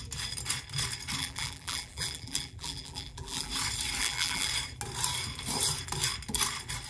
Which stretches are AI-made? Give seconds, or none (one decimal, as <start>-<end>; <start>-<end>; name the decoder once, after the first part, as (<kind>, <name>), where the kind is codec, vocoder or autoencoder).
1.2-3.5 (vocoder, BigVGAN v2); 4.0-4.5

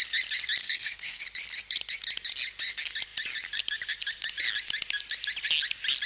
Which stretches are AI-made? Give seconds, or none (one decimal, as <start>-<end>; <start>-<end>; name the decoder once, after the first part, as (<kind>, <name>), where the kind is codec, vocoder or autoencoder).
0.6-1.2 (codec, SNAC)

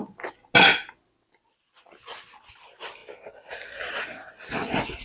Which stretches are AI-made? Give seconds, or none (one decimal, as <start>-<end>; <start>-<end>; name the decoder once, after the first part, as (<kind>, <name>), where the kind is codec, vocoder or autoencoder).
none

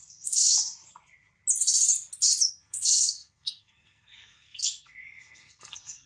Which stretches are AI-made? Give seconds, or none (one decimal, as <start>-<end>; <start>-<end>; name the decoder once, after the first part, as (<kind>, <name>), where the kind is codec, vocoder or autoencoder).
0.0-0.8 (codec, SNAC); 2.5-6.1

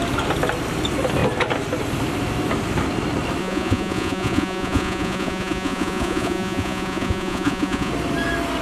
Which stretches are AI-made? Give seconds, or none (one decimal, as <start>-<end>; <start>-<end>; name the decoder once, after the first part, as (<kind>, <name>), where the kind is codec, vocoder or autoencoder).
3.4-7.9 (vocoder, Vocos)